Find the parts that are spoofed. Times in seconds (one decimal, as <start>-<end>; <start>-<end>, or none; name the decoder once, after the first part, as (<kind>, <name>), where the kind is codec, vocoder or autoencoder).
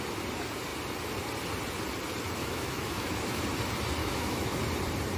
2.4-3.4 (autoencoder, DAC-VAE); 4.0-4.6